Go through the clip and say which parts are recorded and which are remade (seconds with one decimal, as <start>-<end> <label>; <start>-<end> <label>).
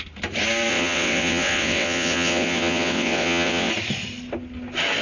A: 0.0-0.7 recorded; 0.7-3.7 remade; 3.7-5.0 recorded